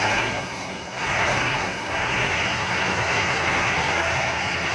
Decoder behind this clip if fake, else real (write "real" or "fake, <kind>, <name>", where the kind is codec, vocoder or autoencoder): fake, codec, SNAC